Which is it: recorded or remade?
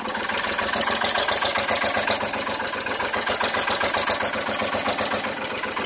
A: recorded